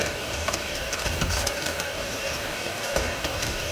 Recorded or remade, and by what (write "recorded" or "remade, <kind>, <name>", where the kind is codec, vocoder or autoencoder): remade, codec, DAC